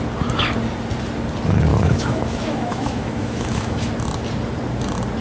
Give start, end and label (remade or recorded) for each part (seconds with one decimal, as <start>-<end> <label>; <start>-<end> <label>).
0.0-1.7 recorded; 1.7-3.9 remade; 3.9-5.2 recorded